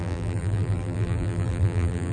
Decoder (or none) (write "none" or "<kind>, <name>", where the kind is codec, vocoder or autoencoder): vocoder, BigVGAN v2